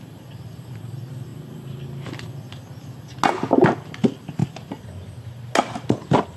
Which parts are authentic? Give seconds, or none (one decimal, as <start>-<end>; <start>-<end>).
0.0-6.4